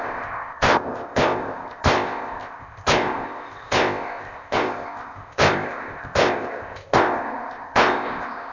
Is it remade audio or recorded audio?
remade